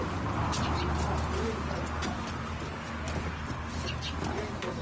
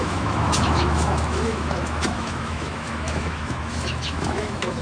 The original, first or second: first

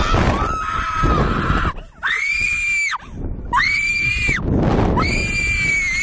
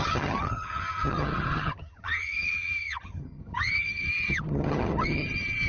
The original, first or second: first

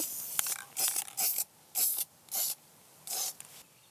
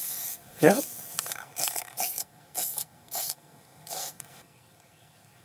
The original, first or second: first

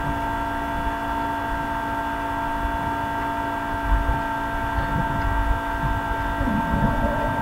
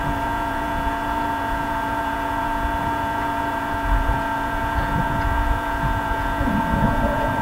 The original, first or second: first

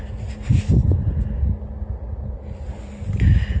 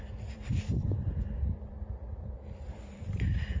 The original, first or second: first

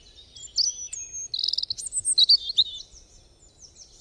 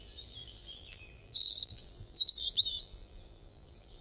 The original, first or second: first